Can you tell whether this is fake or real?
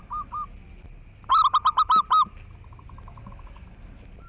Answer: real